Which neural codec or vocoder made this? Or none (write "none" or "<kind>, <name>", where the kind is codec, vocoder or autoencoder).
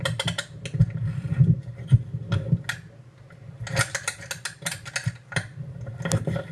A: none